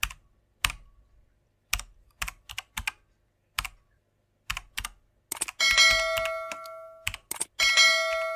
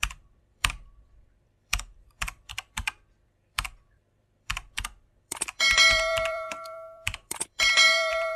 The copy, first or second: second